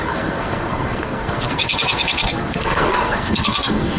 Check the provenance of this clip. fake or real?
fake